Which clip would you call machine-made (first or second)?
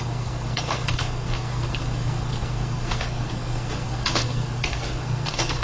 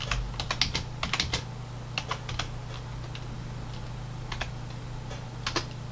first